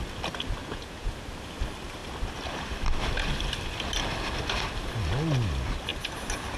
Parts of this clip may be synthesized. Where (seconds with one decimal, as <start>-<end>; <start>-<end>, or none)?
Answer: 0.6-1.1